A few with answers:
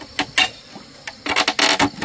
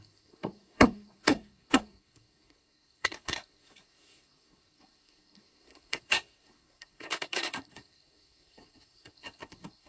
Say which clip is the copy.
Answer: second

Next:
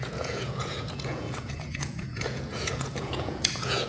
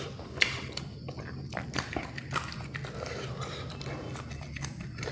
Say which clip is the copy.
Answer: first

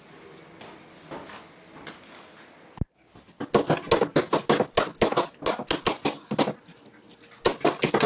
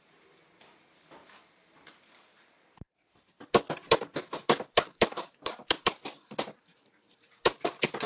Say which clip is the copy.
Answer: second